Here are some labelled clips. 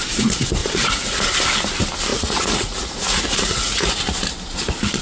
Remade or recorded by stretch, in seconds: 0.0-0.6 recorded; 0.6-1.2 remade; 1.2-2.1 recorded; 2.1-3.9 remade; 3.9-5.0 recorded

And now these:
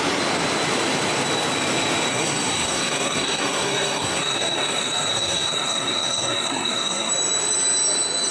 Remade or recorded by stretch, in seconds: 0.0-2.1 recorded; 2.1-7.1 remade; 7.1-8.3 recorded